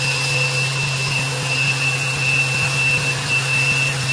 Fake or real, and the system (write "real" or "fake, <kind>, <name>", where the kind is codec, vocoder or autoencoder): real